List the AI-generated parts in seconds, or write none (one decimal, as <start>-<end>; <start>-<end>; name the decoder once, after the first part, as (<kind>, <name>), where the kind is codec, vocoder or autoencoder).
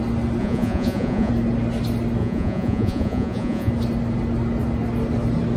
0.4-1.3 (vocoder, Vocos); 2.2-3.7